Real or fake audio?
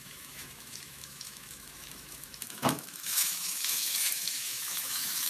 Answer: fake